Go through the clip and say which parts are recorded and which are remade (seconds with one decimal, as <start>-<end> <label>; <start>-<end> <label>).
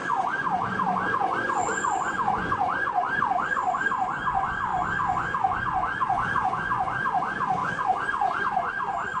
0.0-9.2 remade